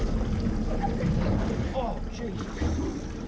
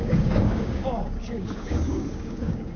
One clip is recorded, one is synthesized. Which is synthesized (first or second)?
second